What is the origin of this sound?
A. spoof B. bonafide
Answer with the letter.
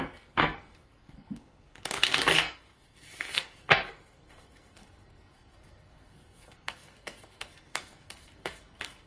A